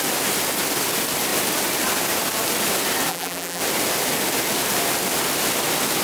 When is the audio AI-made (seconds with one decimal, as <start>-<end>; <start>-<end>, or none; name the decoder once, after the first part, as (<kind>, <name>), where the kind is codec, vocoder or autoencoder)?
3.1-3.6 (vocoder, BigVGAN v2)

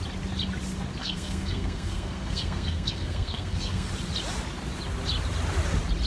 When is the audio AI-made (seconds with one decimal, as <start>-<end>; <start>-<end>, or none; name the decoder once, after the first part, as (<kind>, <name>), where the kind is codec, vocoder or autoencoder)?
1.0-3.9 (codec, SNAC)

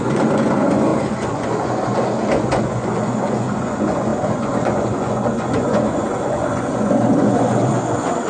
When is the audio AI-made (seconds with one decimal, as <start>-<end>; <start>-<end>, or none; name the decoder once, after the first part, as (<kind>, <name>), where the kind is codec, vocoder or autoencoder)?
0.0-8.3 (vocoder, Vocos)

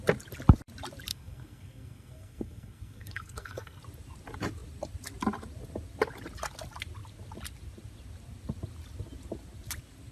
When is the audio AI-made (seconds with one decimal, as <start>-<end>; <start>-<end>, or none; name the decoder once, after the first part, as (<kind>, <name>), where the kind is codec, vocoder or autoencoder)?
1.1-3.8 (codec, SNAC)

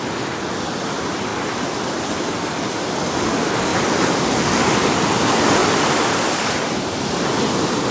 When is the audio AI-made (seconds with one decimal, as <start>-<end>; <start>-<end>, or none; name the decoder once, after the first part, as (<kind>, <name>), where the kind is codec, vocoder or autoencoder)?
3.7-4.3 (vocoder, BigVGAN v2); 5.6-7.4

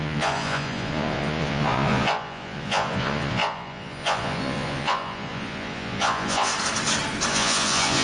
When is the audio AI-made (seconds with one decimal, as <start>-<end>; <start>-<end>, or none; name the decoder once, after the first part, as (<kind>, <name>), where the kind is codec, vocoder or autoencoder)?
0.0-6.5 (vocoder, Vocos); 7.3-8.0